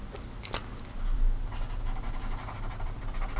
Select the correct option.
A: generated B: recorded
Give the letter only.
B